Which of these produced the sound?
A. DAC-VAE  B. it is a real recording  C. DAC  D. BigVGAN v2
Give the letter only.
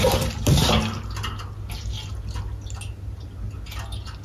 B